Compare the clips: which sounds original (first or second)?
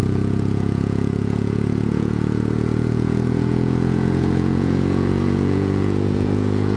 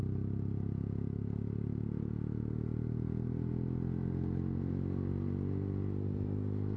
second